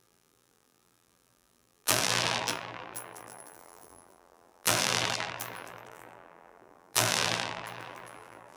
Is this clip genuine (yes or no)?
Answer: no